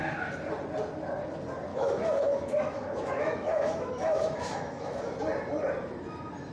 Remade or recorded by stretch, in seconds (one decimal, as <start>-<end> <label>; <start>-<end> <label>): 0.0-1.7 recorded; 1.7-5.0 remade; 5.0-6.5 recorded